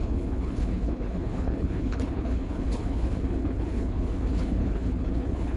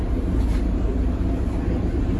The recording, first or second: second